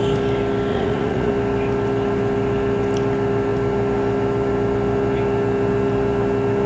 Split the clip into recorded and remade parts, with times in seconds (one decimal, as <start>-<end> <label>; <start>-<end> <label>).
0.0-0.7 recorded; 0.7-1.3 remade; 1.3-6.7 recorded